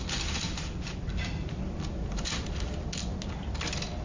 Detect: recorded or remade recorded